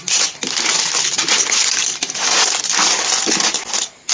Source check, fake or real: real